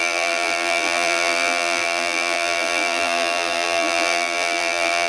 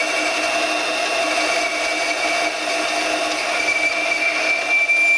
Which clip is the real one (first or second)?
second